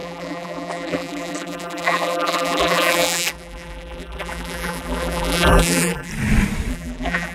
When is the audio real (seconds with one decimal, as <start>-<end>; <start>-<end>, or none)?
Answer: 6.1-6.7